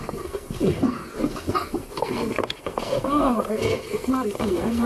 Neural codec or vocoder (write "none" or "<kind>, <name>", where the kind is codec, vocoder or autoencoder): codec, SNAC